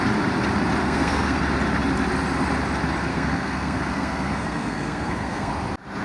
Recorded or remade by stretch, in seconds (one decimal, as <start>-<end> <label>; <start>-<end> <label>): 0.0-0.8 recorded; 0.8-1.4 remade; 1.4-3.1 recorded; 3.1-5.5 remade; 5.5-6.0 recorded